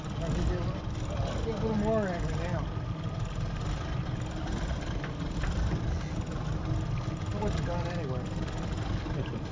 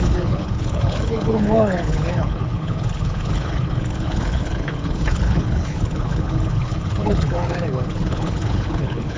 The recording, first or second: first